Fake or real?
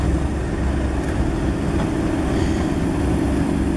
real